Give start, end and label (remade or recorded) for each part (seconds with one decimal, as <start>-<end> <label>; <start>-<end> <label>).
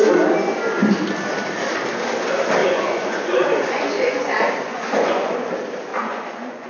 0.0-2.6 recorded; 2.6-5.5 remade; 5.5-5.9 recorded; 5.9-6.7 remade